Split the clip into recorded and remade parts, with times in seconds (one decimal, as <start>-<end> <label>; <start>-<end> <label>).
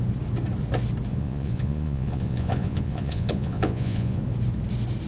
0.0-1.1 recorded; 1.1-4.2 remade; 4.2-5.1 recorded